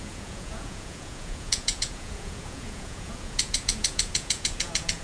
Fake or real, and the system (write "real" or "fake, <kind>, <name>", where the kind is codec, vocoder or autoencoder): fake, vocoder, Vocos